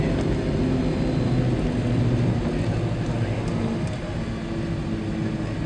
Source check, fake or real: real